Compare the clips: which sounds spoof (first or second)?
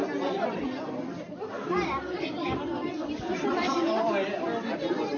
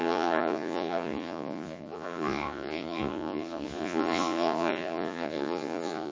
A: second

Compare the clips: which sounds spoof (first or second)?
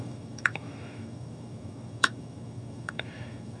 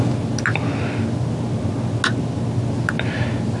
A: first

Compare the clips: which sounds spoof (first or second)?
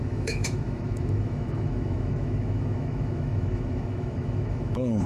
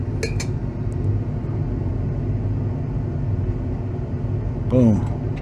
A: first